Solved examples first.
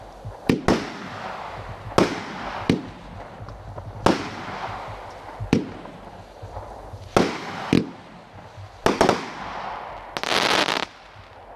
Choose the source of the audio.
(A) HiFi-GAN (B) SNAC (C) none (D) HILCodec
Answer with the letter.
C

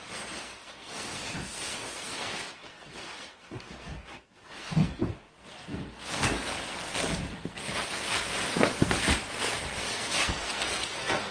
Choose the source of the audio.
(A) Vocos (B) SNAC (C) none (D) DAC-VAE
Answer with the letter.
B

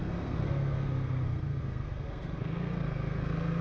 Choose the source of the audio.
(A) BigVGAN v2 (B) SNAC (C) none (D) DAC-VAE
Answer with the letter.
B